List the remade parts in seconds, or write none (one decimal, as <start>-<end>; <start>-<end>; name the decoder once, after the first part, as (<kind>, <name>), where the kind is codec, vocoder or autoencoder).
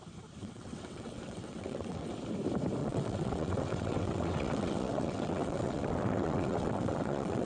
0.4-2.1 (vocoder, WaveNeXt); 2.8-7.5